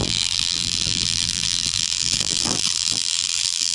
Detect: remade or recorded remade